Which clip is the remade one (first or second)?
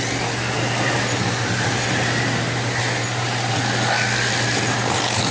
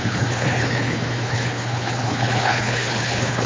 second